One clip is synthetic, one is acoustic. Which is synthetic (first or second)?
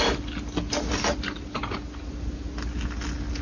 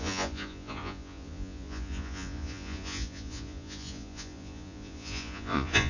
second